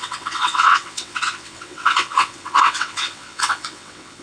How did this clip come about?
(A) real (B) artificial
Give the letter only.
B